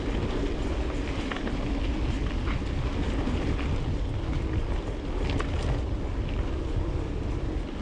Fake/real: real